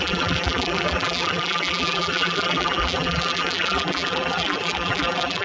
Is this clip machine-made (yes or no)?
yes